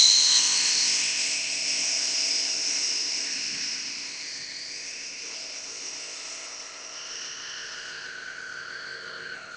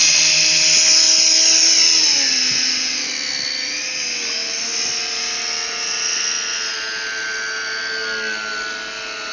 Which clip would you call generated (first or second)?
first